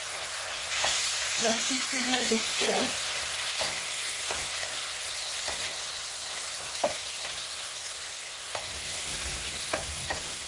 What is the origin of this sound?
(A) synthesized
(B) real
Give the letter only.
A